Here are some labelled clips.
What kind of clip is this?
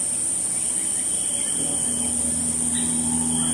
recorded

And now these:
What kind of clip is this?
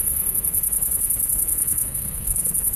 remade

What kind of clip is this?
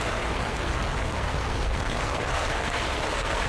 remade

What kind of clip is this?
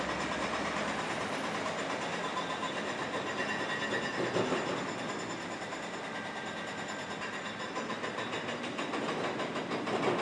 recorded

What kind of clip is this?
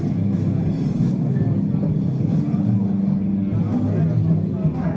recorded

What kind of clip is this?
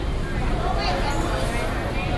recorded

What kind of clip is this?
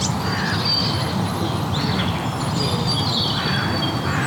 recorded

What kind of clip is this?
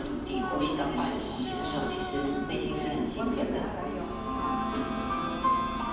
recorded